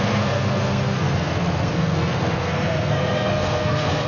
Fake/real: fake